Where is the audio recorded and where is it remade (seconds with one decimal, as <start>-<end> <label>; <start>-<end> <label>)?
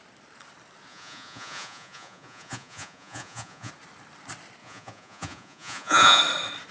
0.0-0.9 recorded; 0.9-3.7 remade; 3.7-4.6 recorded; 4.6-6.2 remade; 6.2-6.7 recorded